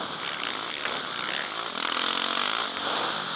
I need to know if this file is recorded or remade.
recorded